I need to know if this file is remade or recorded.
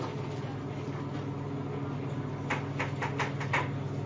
recorded